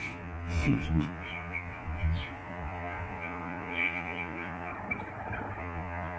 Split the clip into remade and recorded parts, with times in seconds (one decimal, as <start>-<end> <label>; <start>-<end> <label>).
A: 0.0-4.7 remade; 4.7-5.6 recorded; 5.6-6.2 remade